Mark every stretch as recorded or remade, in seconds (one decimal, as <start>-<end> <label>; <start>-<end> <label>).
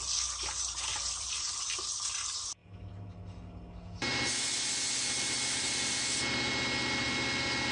0.0-0.9 recorded; 0.9-1.5 remade; 1.5-7.7 recorded